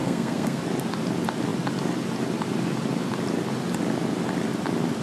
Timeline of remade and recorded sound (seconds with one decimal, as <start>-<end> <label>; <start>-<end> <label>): 0.0-0.6 remade; 0.6-5.0 recorded

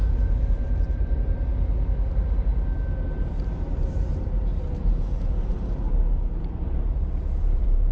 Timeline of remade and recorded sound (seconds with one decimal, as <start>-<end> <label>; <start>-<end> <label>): 0.0-1.5 remade; 1.5-2.1 recorded; 2.1-2.5 remade; 2.5-3.3 recorded; 3.3-7.9 remade